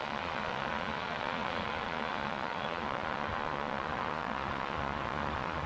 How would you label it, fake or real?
fake